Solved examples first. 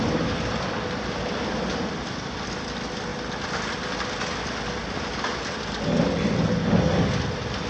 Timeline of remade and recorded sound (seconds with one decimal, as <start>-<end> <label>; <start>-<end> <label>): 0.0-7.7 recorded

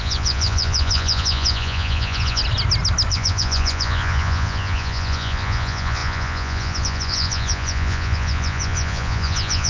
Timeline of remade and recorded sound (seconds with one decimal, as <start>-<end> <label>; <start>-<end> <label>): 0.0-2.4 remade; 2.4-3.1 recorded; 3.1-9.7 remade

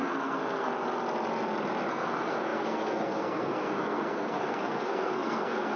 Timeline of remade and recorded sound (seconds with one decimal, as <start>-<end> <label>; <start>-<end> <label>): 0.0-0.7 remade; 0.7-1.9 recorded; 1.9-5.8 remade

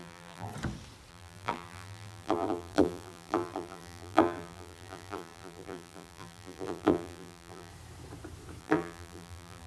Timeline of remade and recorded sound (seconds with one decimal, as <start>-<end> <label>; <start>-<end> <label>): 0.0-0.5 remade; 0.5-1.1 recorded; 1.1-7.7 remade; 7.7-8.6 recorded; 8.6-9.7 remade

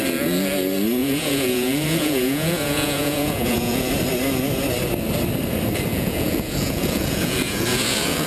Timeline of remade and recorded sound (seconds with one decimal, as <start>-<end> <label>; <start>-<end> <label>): 0.0-1.0 recorded; 1.0-3.9 remade; 3.9-5.9 recorded; 5.9-8.3 remade

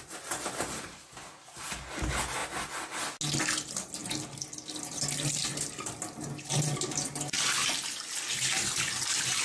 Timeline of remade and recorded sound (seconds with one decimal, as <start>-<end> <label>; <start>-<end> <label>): 0.0-9.4 recorded

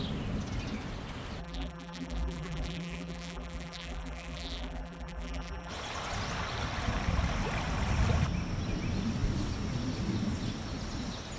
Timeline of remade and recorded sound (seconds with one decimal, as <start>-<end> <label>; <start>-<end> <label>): 0.0-1.4 recorded; 1.4-5.7 remade; 5.7-11.4 recorded

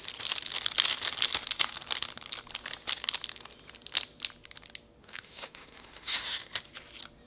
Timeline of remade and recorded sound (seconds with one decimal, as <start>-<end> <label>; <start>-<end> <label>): 0.0-5.0 recorded; 5.0-6.5 remade; 6.5-7.3 recorded